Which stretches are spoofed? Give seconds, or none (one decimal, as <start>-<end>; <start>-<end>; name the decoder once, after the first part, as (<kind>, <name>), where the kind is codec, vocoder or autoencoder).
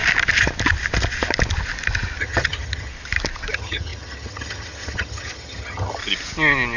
2.2-2.9 (vocoder, HiFi-GAN); 3.5-6.0